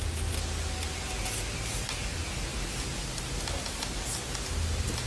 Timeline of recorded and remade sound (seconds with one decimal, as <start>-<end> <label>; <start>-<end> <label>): 0.0-5.1 recorded